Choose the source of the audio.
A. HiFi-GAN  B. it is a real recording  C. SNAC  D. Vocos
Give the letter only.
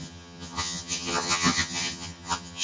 A